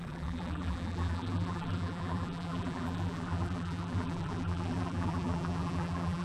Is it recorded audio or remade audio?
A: remade